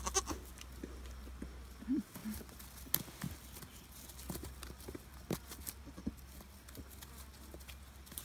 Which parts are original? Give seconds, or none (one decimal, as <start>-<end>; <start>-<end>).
0.0-8.2